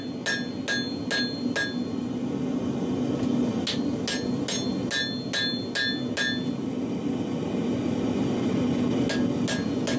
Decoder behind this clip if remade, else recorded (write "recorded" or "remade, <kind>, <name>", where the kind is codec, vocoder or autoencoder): recorded